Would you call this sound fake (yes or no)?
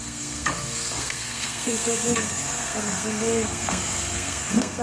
yes